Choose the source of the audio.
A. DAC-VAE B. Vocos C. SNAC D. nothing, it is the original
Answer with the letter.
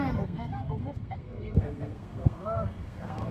C